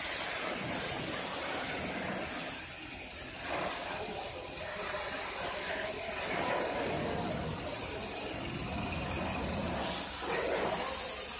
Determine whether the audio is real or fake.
real